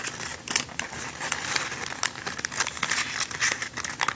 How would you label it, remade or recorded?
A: recorded